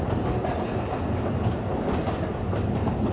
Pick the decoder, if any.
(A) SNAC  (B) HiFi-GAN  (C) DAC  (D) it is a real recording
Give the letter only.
D